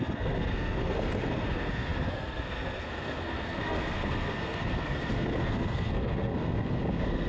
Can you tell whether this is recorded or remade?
remade